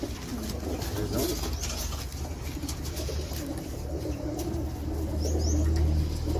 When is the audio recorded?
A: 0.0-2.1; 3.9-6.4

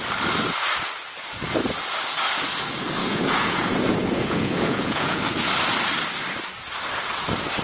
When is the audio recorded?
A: 0.0-3.0; 5.2-7.6

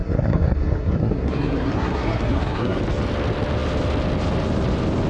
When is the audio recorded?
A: 2.8-5.1

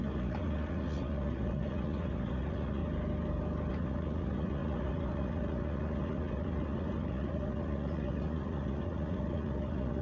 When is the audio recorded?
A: 2.8-3.7

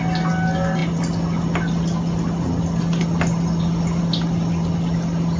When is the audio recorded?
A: 0.0-5.4

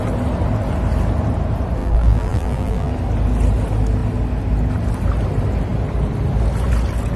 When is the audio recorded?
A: 0.0-1.8; 2.9-7.2

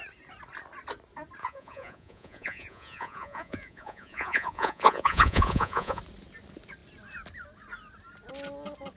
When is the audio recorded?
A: 0.0-1.4; 6.0-9.0